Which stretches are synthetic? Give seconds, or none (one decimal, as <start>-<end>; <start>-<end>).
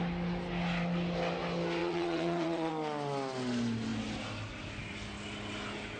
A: 1.8-2.7